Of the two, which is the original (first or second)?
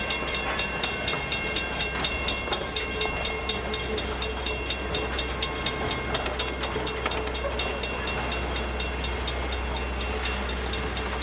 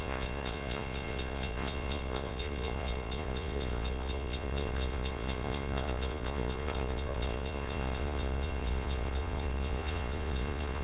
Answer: first